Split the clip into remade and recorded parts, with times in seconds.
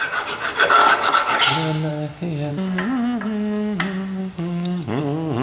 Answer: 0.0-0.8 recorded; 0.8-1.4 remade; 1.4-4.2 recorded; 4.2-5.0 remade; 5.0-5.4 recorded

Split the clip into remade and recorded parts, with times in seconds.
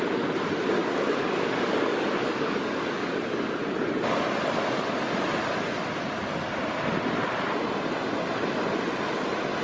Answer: 0.0-0.8 recorded; 0.8-3.5 remade; 3.5-9.6 recorded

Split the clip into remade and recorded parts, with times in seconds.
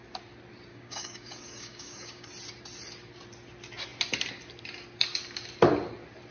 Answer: 0.0-0.7 recorded; 0.7-2.3 remade; 2.3-6.3 recorded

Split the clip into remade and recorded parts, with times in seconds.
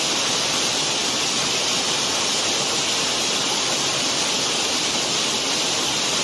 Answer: 0.0-6.2 recorded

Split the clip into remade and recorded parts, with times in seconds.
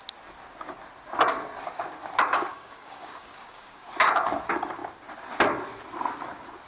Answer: 0.0-2.5 recorded; 2.5-3.9 remade; 3.9-6.7 recorded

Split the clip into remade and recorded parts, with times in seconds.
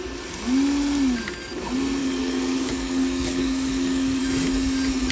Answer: 0.0-2.0 recorded; 2.0-4.2 remade; 4.2-5.1 recorded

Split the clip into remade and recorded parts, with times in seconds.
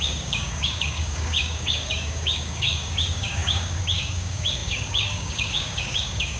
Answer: 0.0-6.4 remade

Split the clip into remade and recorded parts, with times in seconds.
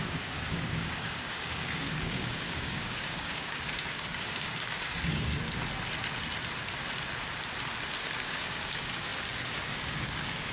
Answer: 0.0-5.3 remade; 5.3-8.0 recorded; 8.0-10.5 remade